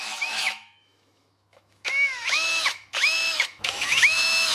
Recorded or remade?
remade